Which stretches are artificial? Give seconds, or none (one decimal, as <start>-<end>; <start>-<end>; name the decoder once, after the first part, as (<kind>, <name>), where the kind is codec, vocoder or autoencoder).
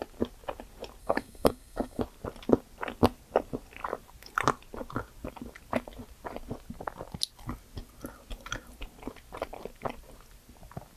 1.0-2.0 (codec, SNAC)